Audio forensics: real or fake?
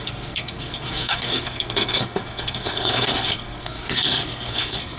fake